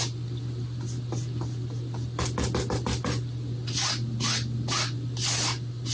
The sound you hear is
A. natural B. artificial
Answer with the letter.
A